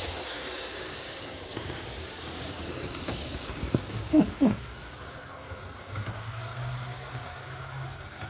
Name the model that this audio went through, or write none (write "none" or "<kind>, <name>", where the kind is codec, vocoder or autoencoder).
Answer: codec, DAC